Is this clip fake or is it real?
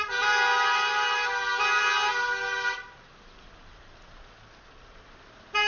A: real